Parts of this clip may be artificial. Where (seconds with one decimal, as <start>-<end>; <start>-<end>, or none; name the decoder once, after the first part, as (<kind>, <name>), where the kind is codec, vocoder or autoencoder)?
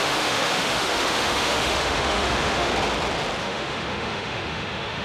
0.0-2.7 (autoencoder, DAC-VAE); 3.4-5.0